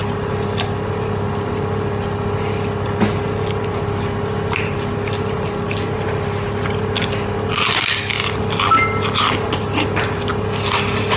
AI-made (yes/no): no